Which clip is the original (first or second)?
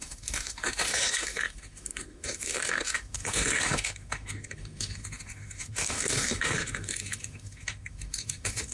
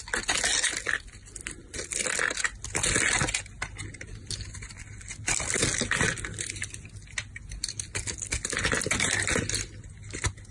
second